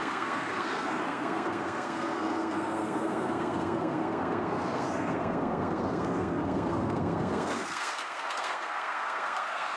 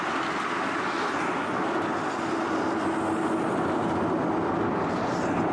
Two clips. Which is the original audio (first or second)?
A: second